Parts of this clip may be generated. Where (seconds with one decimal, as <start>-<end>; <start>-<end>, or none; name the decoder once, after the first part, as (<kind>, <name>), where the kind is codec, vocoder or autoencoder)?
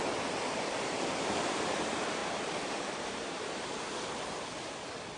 2.2-3.6 (vocoder, BigVGAN v2)